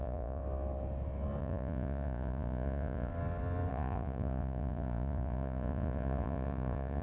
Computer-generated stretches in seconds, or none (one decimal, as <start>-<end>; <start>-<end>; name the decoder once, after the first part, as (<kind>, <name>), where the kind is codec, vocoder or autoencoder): 0.0-0.4 (vocoder, Vocos); 1.4-3.1; 3.7-7.0